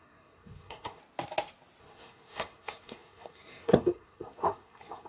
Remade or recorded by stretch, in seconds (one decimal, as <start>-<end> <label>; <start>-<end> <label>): 0.0-1.0 remade; 1.0-1.8 recorded; 1.8-5.1 remade